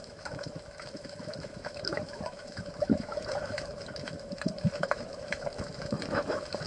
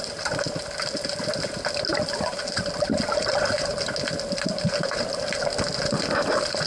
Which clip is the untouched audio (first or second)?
second